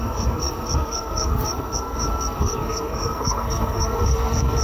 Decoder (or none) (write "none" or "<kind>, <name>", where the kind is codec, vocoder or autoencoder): codec, SNAC